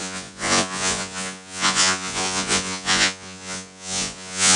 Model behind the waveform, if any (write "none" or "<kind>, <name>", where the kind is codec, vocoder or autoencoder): vocoder, Vocos